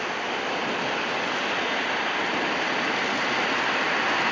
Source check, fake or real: real